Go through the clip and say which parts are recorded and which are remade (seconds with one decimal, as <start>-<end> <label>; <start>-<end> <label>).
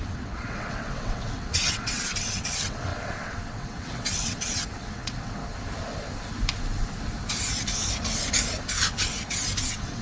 0.0-5.4 remade; 5.4-9.6 recorded; 9.6-10.0 remade